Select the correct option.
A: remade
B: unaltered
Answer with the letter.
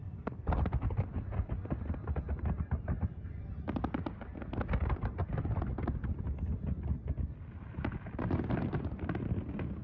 B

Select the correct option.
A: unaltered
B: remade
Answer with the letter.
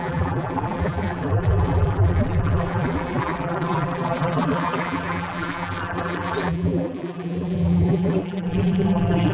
B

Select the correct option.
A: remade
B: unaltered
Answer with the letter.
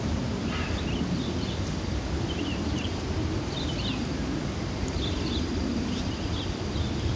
A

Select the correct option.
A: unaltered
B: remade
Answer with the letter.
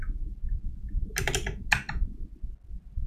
A